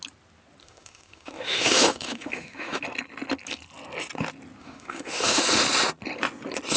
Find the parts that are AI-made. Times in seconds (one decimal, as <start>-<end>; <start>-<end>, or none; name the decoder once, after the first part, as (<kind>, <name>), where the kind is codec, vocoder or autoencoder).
0.6-2.8 (autoencoder, DAC-VAE); 4.6-5.4